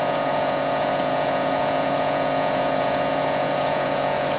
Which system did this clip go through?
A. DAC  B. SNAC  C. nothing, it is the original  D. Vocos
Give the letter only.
D